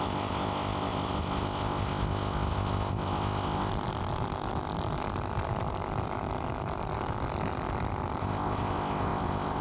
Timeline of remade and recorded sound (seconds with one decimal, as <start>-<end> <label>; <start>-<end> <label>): 0.0-3.7 remade; 3.7-8.2 recorded; 8.2-9.6 remade